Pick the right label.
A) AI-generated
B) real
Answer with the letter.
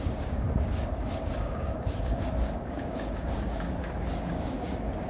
A